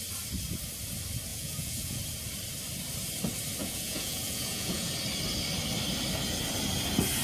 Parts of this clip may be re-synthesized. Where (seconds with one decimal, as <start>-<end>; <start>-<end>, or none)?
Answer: 1.3-2.0; 3.6-4.9